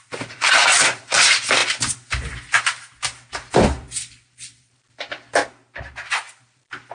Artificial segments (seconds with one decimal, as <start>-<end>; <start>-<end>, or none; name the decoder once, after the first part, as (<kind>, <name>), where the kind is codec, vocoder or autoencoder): 0.0-1.6 (vocoder, BigVGAN v2); 3.5-5.4; 6.1-6.9